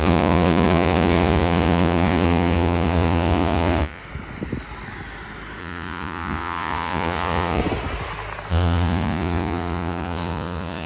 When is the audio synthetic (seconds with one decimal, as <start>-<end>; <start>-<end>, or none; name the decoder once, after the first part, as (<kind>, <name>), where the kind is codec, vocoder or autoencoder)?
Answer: 0.0-4.0 (vocoder, Vocos); 5.6-7.6; 8.5-10.9